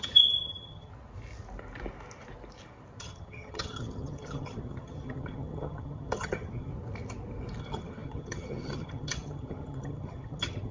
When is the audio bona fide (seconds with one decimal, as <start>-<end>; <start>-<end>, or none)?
0.9-3.0; 6.7-7.6